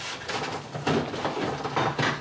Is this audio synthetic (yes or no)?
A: no